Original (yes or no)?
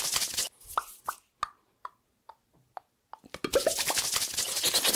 yes